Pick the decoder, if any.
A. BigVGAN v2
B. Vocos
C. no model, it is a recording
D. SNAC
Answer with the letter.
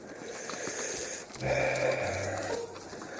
C